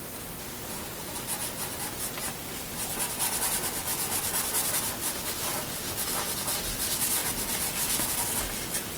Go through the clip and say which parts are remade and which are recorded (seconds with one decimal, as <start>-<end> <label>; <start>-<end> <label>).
0.0-9.0 recorded